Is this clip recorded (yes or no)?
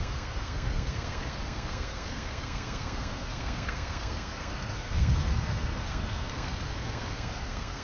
no